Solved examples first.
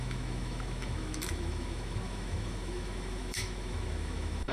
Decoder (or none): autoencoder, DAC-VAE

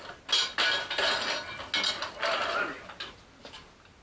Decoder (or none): none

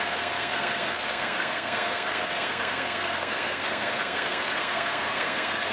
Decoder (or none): codec, SNAC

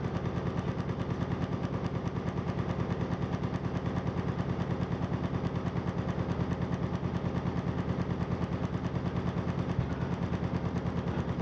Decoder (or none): none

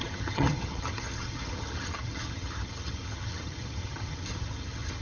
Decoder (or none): vocoder, HiFi-GAN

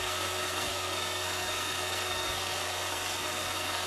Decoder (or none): codec, SNAC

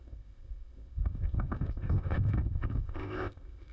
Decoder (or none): codec, ZipCodec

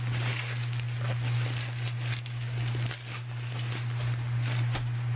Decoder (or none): none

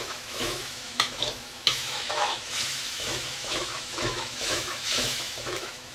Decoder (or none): autoencoder, DAC-VAE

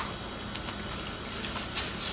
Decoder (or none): none